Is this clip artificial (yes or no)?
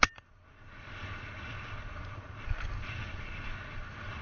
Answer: no